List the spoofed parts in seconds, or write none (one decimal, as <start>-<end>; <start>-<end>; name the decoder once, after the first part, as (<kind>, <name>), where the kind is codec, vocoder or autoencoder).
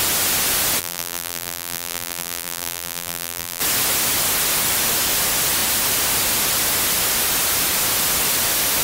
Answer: 0.8-3.6 (vocoder, BigVGAN v2)